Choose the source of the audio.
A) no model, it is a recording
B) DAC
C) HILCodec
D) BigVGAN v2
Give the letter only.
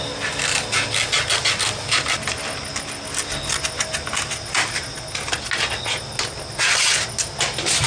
A